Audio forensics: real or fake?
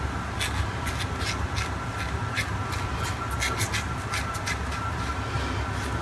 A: real